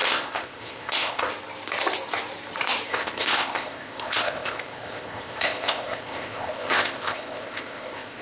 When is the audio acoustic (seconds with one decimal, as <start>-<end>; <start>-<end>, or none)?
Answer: 1.3-2.9